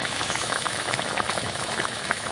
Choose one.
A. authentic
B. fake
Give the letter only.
B